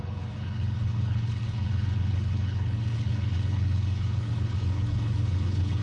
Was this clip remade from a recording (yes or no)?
yes